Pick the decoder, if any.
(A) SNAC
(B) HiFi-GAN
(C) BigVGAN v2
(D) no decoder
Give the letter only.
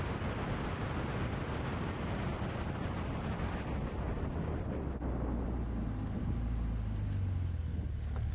D